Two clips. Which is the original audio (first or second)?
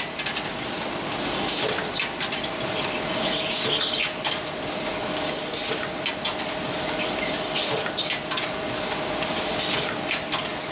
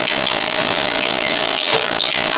first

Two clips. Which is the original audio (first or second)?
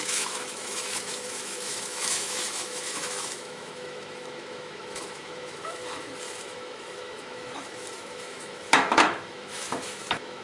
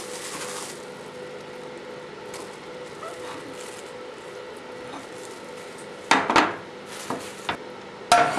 second